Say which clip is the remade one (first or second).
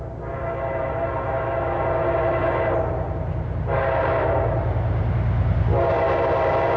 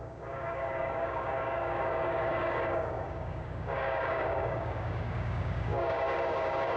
second